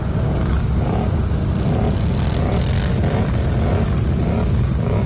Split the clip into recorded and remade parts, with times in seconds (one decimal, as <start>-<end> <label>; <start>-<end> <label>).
0.0-1.4 remade; 1.4-4.5 recorded; 4.5-5.1 remade